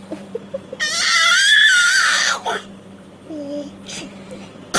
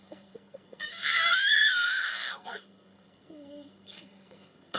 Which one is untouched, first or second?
first